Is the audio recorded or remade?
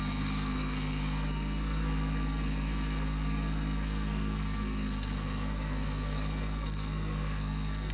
remade